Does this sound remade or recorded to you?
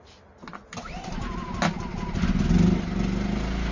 recorded